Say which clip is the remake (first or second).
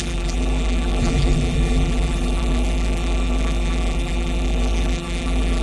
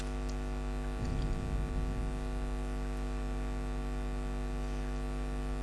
first